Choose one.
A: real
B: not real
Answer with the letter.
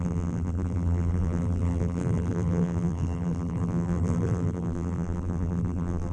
B